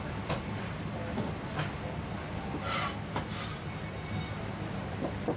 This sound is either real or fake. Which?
real